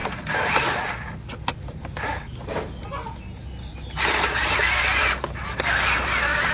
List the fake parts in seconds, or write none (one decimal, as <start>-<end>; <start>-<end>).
none